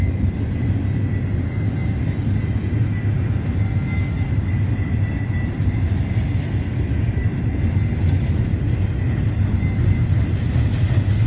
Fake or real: real